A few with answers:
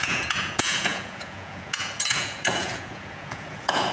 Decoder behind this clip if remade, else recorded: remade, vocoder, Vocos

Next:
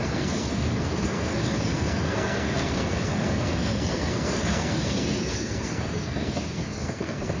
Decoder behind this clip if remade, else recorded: remade, codec, SNAC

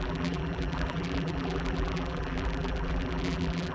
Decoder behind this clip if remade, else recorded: remade, vocoder, BigVGAN v2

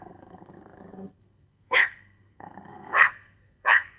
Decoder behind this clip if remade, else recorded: remade, codec, SNAC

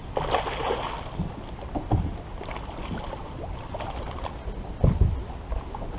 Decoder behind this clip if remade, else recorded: recorded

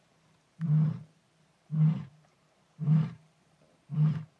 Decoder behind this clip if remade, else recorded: remade, vocoder, BigVGAN v2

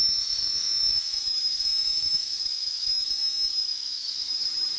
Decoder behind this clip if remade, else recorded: remade, autoencoder, DAC-VAE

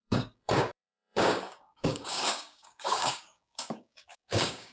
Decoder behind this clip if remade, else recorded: remade, codec, DAC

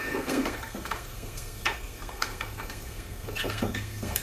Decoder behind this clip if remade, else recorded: remade, codec, SNAC